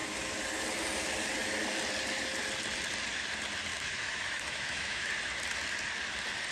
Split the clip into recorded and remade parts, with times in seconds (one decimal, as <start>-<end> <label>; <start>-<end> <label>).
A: 0.0-3.7 recorded; 3.7-5.1 remade; 5.1-6.5 recorded